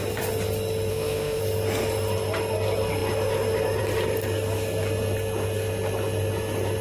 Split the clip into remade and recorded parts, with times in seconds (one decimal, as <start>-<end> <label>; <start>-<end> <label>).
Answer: 0.0-0.9 recorded; 0.9-1.4 remade; 1.4-6.8 recorded